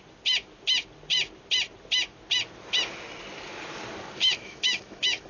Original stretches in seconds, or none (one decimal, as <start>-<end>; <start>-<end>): 0.0-4.2